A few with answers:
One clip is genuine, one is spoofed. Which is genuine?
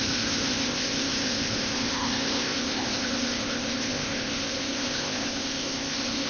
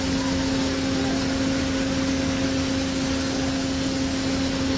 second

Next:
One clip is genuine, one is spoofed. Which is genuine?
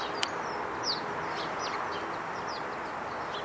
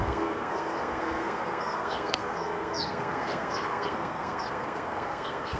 first